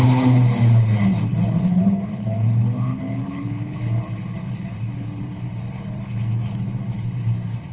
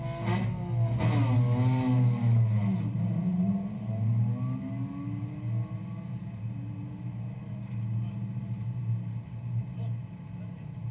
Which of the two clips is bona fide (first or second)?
second